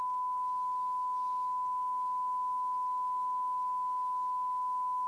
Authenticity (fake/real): real